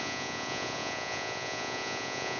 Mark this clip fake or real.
fake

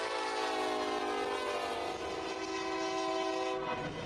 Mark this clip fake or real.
real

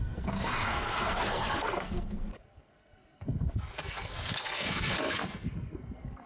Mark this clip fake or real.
fake